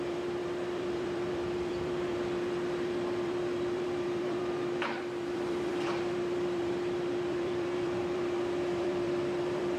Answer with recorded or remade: remade